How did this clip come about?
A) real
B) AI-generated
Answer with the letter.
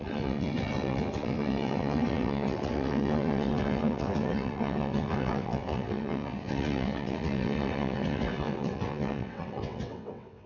B